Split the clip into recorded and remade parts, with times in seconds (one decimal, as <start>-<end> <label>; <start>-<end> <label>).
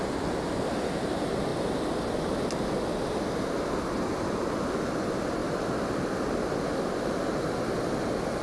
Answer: 0.0-8.4 recorded